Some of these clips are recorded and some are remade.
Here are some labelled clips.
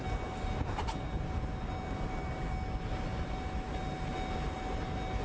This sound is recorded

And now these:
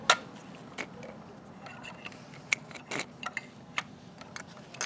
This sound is recorded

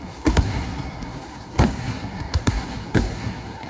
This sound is remade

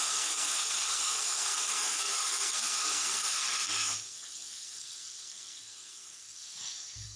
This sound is remade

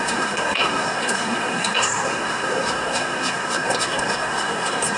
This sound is remade